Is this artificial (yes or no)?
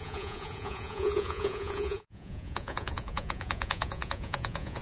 yes